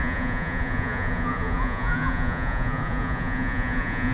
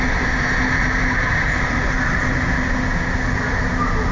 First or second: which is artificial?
first